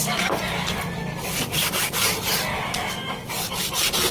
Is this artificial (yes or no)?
no